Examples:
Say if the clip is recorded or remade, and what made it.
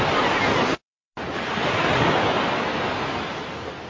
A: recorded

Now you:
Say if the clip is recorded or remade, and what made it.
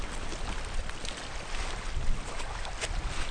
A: recorded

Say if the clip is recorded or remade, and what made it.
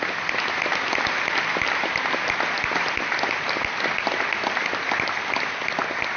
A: recorded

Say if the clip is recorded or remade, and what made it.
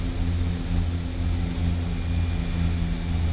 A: recorded